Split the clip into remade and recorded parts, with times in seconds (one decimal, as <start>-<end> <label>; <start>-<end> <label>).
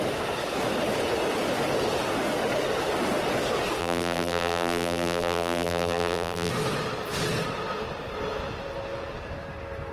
0.0-3.8 recorded; 3.8-6.5 remade; 6.5-9.9 recorded